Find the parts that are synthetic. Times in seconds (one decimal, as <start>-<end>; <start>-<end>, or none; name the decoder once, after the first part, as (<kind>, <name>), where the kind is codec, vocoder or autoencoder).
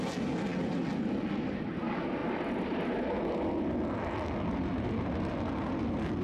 none